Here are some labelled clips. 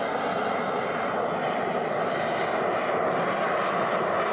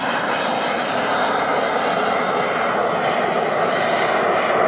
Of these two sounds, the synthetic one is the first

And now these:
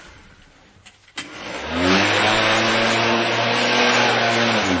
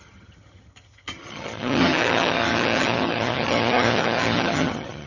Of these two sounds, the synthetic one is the second